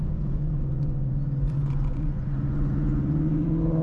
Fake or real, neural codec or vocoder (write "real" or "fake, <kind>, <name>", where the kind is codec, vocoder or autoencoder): fake, vocoder, Vocos